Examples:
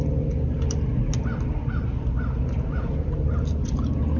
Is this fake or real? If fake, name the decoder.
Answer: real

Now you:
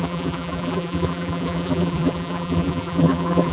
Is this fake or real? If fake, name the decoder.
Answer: fake, vocoder, BigVGAN v2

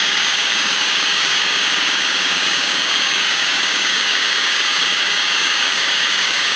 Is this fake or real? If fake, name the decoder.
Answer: fake, codec, DAC